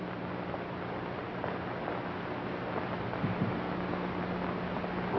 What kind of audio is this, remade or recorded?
recorded